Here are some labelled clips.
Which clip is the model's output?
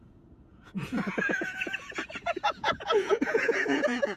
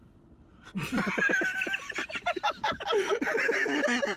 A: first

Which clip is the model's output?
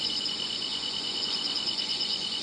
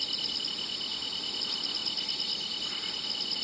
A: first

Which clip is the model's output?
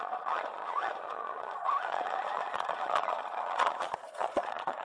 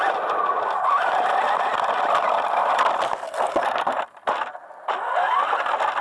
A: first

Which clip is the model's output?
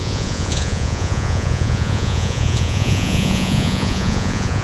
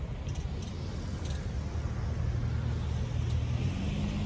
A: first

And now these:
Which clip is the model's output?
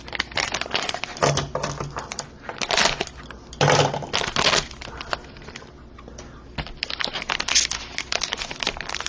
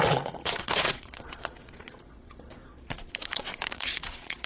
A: second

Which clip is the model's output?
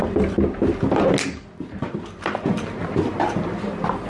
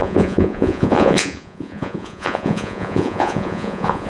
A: second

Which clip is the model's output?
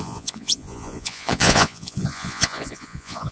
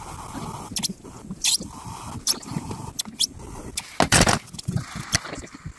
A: first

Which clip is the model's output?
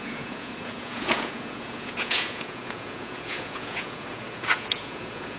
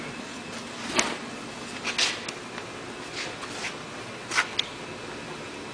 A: first